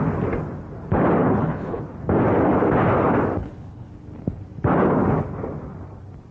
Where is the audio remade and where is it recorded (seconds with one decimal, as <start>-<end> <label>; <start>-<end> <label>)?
0.0-1.2 recorded; 1.2-1.8 remade; 1.8-3.4 recorded; 3.4-3.9 remade; 3.9-6.3 recorded